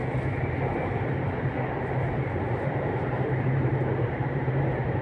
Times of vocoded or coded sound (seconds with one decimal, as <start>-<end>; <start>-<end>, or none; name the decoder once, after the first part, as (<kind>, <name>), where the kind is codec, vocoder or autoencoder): 2.6-5.0 (vocoder, BigVGAN v2)